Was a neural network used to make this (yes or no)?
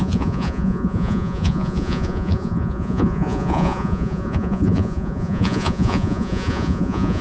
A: yes